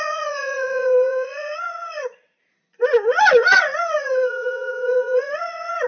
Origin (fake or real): fake